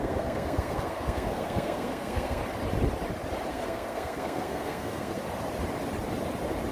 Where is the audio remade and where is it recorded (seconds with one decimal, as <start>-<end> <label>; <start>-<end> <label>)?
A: 0.0-2.4 remade; 2.4-3.5 recorded; 3.5-5.2 remade; 5.2-6.7 recorded